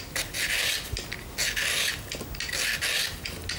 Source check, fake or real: real